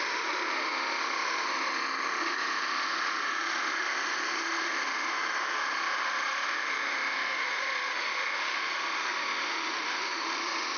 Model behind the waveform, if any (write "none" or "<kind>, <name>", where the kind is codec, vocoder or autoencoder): autoencoder, DAC-VAE